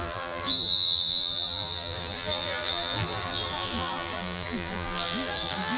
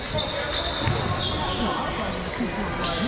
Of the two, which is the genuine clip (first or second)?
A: second